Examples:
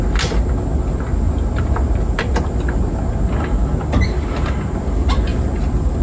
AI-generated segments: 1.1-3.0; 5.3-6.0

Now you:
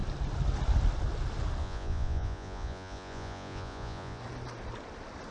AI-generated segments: 1.6-4.2

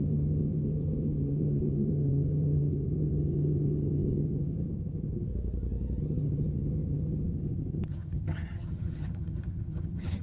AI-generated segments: 0.0-5.3; 6.0-10.2

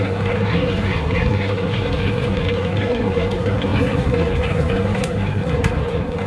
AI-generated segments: 0.0-6.3